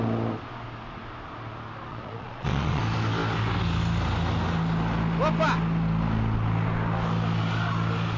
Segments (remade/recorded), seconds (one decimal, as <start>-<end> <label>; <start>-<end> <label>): 0.0-1.9 recorded; 1.9-2.8 remade; 2.8-8.2 recorded